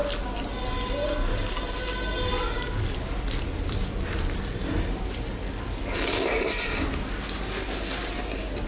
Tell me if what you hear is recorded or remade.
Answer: recorded